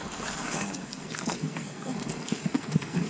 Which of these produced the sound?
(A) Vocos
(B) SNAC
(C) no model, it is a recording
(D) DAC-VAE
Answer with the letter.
B